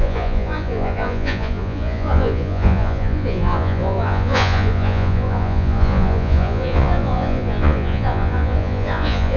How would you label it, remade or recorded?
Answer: remade